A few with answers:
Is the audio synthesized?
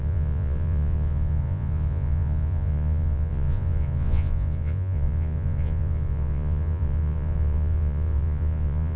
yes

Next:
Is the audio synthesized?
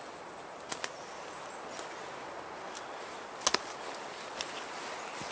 no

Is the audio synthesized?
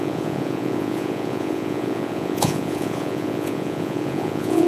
yes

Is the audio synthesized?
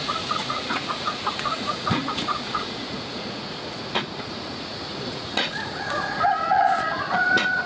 yes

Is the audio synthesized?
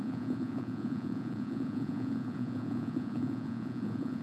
yes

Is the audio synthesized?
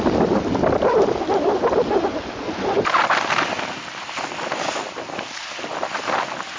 no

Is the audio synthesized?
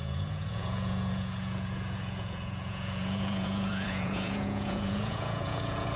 yes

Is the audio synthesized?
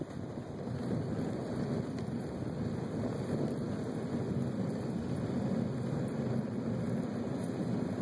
no